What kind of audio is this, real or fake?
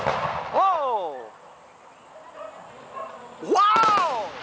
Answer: real